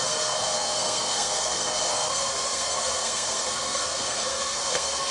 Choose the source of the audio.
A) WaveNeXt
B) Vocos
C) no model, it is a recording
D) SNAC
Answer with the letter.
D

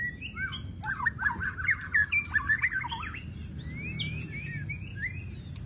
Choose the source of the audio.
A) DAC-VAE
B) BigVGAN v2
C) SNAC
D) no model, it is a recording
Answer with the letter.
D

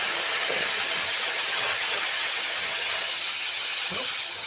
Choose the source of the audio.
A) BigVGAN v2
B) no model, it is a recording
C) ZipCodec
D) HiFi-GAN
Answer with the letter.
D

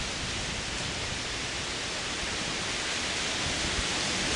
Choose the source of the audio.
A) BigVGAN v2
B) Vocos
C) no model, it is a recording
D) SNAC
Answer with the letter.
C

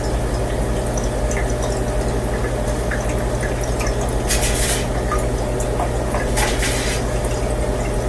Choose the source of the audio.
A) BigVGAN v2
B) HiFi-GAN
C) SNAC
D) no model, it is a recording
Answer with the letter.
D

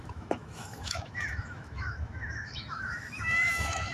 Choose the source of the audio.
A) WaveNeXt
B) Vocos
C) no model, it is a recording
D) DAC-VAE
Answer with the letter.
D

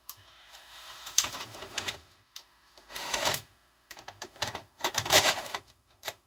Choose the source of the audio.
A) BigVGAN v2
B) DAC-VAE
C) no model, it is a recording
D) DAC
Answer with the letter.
B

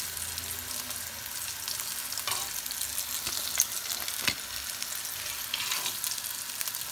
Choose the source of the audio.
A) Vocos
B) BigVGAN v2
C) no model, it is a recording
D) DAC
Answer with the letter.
C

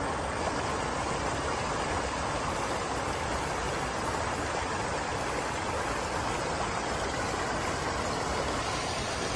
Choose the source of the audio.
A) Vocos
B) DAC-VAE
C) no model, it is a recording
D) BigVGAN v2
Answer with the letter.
C